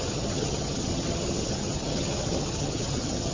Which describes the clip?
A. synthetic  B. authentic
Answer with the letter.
A